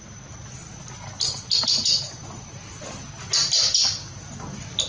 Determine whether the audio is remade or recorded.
recorded